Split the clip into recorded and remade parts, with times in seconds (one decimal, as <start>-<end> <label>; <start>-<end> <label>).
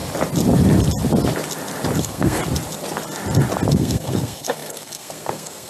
0.0-2.0 recorded; 2.0-2.4 remade; 2.4-3.7 recorded; 3.7-5.7 remade